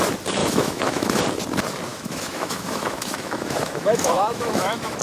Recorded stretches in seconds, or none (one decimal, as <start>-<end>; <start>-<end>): 0.0-0.4; 1.2-1.9